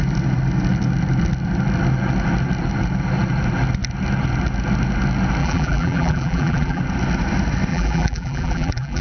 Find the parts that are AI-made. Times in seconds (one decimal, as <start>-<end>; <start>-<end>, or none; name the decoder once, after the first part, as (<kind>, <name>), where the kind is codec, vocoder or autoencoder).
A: 5.4-6.8 (vocoder, BigVGAN v2); 7.7-9.0